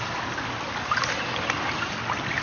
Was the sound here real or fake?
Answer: real